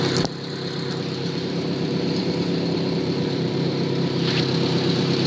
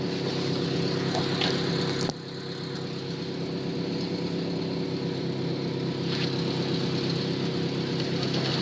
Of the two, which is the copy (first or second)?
first